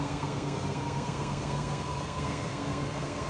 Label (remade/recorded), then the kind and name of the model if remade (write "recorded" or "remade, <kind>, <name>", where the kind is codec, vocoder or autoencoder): remade, codec, SNAC